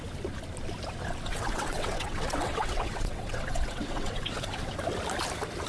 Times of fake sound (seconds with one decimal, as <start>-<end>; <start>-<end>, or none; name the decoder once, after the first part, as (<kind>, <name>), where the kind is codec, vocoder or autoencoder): 1.3-4.7 (vocoder, WaveNeXt)